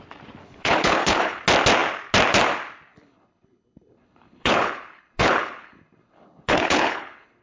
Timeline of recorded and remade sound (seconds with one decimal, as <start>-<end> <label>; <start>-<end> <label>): 0.0-0.4 recorded; 0.4-1.4 remade; 1.4-2.9 recorded; 2.9-7.4 remade

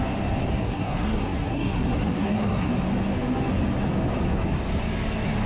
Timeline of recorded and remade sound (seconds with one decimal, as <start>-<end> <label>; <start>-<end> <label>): 0.0-0.6 recorded; 0.6-2.7 remade; 2.7-5.5 recorded